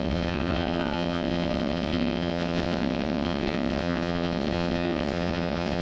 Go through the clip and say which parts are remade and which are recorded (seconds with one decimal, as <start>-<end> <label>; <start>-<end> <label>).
0.0-5.8 remade